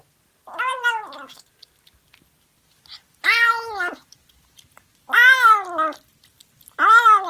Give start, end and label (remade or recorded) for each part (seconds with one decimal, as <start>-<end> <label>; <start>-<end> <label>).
0.0-7.3 recorded